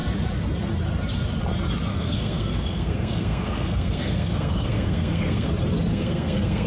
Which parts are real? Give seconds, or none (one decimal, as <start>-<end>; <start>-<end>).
0.0-1.9; 5.5-5.9